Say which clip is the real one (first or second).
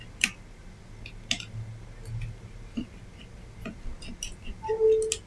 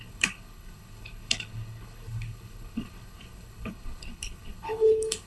first